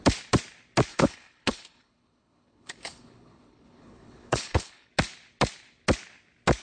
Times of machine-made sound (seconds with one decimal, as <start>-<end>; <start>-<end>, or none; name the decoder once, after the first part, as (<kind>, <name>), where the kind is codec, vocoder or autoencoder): 0.9-4.9 (codec, HILCodec)